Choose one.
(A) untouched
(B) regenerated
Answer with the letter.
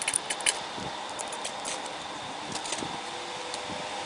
A